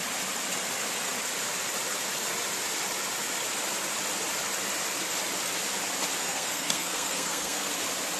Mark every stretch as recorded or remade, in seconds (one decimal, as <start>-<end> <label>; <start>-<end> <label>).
0.0-6.2 recorded; 6.2-7.7 remade; 7.7-8.2 recorded